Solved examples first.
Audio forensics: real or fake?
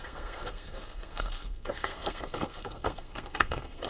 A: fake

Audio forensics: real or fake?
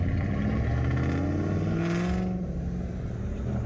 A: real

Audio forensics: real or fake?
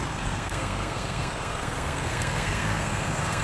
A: fake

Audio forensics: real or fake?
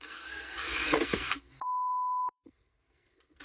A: fake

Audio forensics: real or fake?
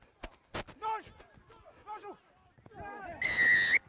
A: real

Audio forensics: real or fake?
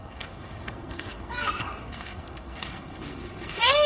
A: fake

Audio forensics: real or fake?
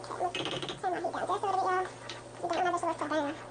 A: real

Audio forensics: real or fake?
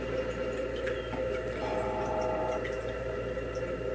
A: real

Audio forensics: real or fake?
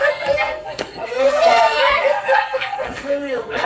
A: fake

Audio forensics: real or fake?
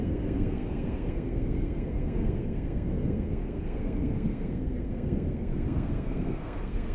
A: fake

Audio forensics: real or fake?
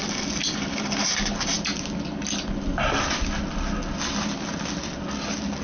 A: real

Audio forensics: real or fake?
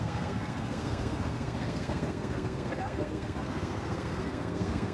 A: fake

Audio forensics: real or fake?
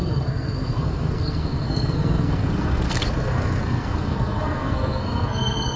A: fake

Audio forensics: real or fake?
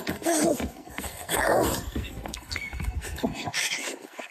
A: fake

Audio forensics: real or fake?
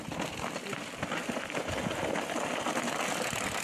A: real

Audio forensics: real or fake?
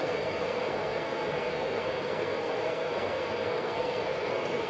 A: fake